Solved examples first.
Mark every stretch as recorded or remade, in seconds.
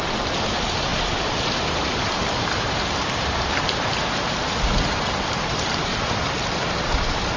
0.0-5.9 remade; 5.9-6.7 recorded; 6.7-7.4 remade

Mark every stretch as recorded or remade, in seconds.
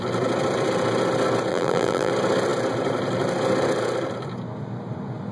0.0-1.5 recorded; 1.5-2.1 remade; 2.1-5.3 recorded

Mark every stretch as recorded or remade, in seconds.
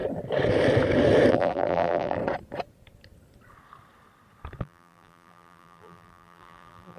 0.0-1.3 recorded; 1.3-2.2 remade; 2.2-4.6 recorded; 4.6-7.0 remade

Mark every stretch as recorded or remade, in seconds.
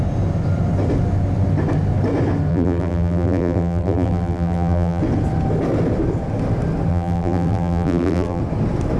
0.0-2.5 recorded; 2.5-5.0 remade; 5.0-6.9 recorded; 6.9-8.4 remade; 8.4-9.0 recorded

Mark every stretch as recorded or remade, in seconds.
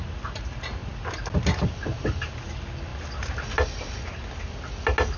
0.0-5.2 recorded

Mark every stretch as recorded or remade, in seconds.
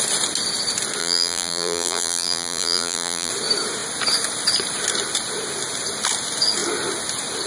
0.0-1.0 recorded; 1.0-3.3 remade; 3.3-7.5 recorded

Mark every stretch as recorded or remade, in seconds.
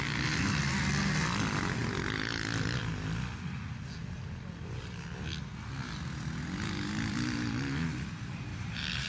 0.0-8.5 recorded; 8.5-9.1 remade